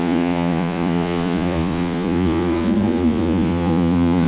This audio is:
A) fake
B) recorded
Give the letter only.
A